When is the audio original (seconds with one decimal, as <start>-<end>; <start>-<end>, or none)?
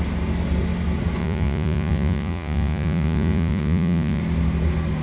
0.0-1.2; 4.2-5.0